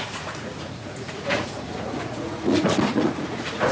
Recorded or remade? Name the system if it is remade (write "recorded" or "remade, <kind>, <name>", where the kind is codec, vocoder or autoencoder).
remade, vocoder, Vocos